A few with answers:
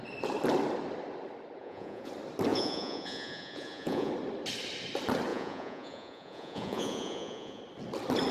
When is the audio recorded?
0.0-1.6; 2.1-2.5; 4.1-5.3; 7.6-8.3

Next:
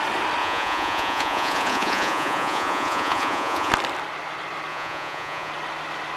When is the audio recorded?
0.0-0.4; 3.7-4.7; 5.5-6.2